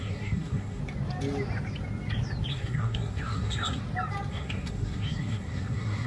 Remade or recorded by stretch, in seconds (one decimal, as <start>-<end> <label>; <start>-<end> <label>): 0.0-0.8 remade; 0.8-2.5 recorded; 2.5-3.8 remade; 3.8-4.3 recorded; 4.3-6.1 remade